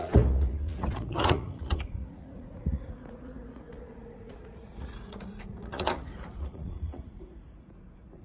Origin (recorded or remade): remade